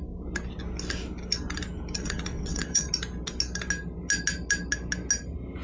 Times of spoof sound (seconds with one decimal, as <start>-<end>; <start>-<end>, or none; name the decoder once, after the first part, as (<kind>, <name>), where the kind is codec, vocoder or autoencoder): 2.0-2.9 (vocoder, WaveNeXt)